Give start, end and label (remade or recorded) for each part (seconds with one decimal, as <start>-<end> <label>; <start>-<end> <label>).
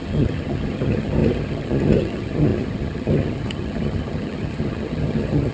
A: 0.0-5.5 remade